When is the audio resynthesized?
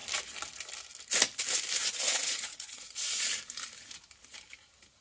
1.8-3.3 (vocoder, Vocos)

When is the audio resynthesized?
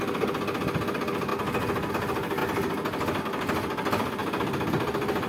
none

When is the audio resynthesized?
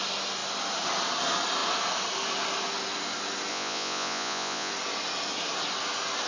3.5-4.7 (vocoder, Vocos)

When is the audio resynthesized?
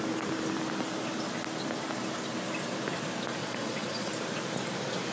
3.4-4.1 (vocoder, Vocos)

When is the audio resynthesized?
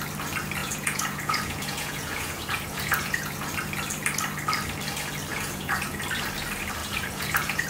0.6-3.4 (vocoder, Vocos); 5.3-6.0; 6.8-7.7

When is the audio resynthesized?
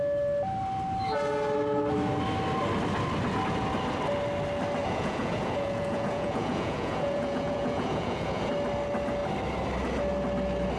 4.8-8.5 (vocoder, Vocos)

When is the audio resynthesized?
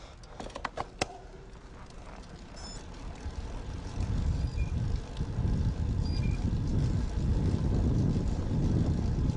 none